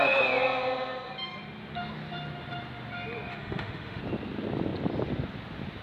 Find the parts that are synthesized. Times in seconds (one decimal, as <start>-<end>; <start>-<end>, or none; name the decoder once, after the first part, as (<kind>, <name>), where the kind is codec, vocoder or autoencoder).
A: 3.3-4.0 (autoencoder, DAC-VAE)